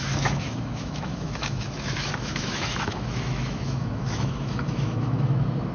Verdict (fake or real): fake